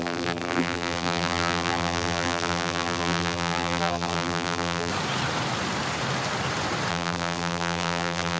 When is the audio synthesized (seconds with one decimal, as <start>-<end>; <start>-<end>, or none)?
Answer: 0.0-4.9; 6.9-8.4